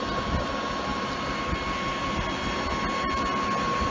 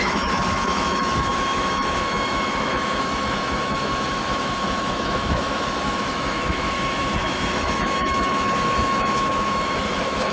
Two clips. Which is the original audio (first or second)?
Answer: first